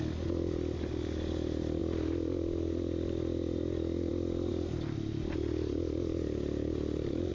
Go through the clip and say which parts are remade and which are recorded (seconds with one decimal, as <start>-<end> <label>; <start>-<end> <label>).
0.0-7.3 recorded